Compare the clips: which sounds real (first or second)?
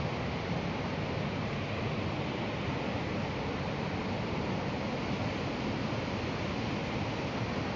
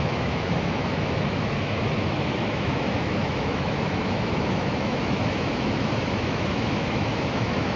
first